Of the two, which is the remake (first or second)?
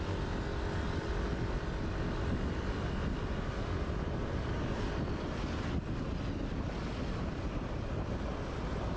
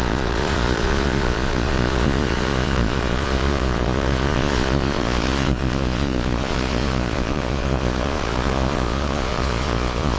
second